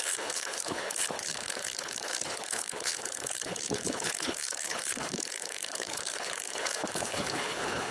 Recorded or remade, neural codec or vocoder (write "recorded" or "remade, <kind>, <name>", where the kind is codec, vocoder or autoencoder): remade, codec, HILCodec